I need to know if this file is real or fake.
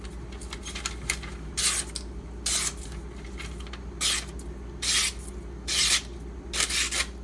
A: real